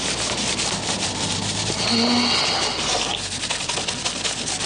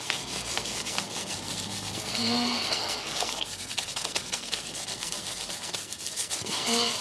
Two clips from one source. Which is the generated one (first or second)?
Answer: second